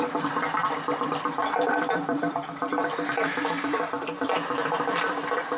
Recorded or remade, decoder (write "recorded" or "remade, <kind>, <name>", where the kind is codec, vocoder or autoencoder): remade, vocoder, BigVGAN v2